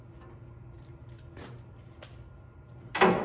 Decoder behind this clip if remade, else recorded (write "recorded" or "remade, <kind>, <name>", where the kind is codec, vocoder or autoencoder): recorded